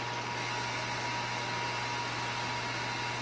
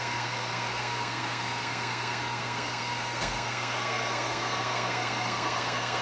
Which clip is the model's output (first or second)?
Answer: second